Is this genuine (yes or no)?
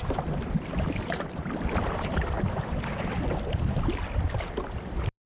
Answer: no